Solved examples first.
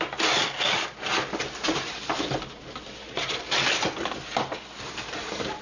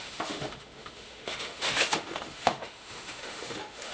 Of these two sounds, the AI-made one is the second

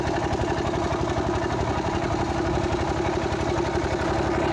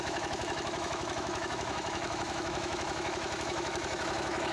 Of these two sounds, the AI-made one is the second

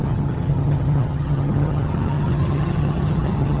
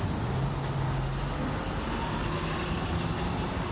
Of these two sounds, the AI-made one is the first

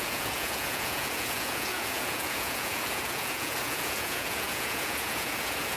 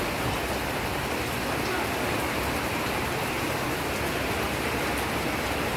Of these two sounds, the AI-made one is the first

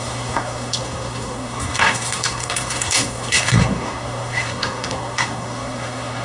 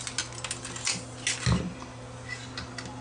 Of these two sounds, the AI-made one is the first